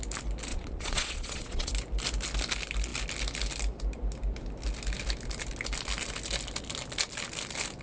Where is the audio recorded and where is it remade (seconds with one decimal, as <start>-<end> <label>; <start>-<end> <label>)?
0.0-0.5 recorded; 0.5-1.7 remade; 1.7-7.8 recorded